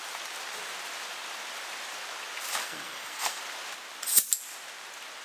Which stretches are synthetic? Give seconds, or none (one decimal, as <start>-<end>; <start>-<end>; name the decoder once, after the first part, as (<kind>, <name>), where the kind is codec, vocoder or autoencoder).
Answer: 2.6-3.4 (codec, SNAC)